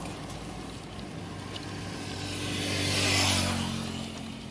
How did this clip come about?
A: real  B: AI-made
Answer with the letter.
A